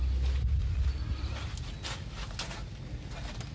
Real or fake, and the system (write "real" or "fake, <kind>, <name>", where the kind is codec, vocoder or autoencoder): real